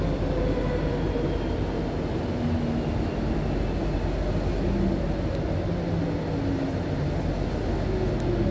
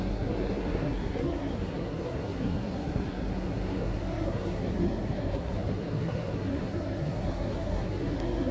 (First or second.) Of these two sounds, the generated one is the second